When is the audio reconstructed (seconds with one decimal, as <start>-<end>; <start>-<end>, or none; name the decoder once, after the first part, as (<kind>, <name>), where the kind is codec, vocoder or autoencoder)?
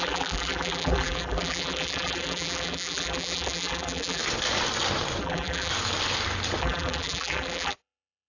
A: 0.0-4.2 (vocoder, BigVGAN v2); 5.2-5.7; 6.6-8.3